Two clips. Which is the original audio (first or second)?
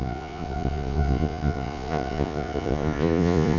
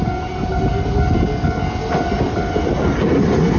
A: second